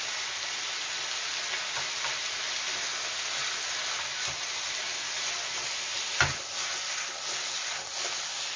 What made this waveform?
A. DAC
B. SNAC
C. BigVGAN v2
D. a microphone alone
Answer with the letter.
D